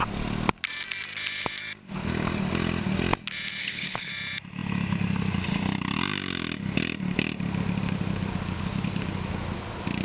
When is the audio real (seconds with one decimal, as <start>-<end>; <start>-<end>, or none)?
0.0-3.6; 4.1-10.0